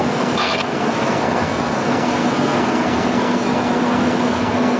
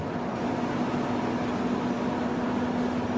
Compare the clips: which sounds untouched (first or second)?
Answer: second